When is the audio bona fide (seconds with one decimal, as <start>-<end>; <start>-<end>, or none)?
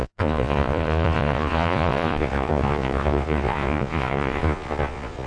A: none